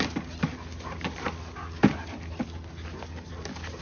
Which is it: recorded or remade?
recorded